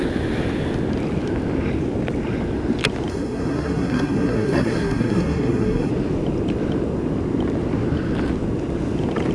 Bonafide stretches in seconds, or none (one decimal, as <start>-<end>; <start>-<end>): 0.0-3.1; 5.9-9.3